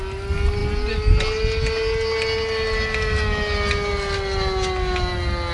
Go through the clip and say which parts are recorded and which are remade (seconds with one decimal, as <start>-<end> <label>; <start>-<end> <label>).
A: 0.0-5.5 recorded